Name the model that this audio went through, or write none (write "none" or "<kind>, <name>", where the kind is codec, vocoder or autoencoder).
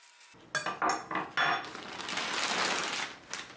none